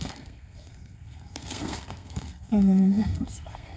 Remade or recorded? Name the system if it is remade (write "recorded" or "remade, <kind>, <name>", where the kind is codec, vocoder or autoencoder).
remade, codec, SNAC